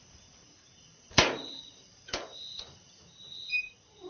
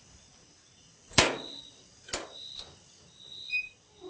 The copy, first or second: first